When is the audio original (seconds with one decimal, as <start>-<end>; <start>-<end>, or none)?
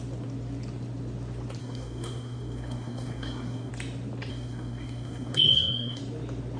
0.0-1.6; 3.7-4.3; 6.0-6.6